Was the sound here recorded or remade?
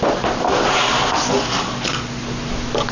recorded